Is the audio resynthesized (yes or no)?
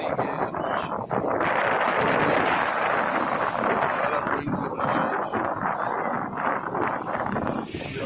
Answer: no